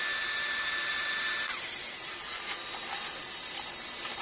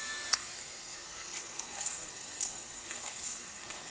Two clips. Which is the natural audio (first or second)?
first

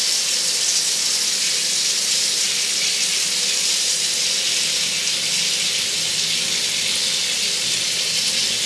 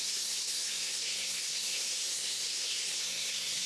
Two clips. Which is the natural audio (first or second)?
first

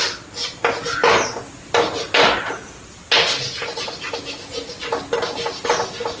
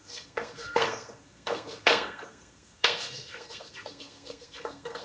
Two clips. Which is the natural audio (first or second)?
first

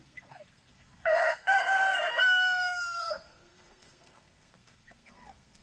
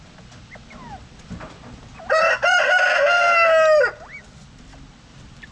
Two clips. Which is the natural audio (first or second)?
second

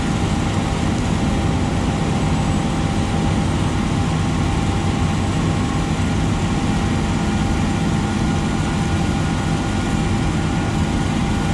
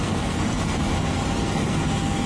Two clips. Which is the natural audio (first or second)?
first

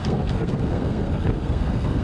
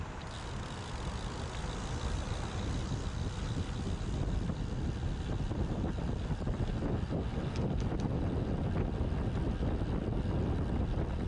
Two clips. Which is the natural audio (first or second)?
second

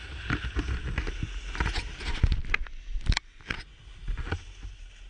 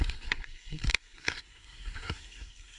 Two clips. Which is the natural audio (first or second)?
first